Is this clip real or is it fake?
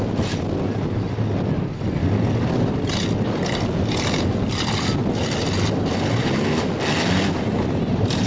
real